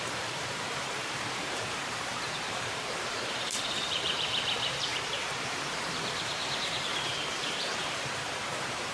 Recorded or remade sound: remade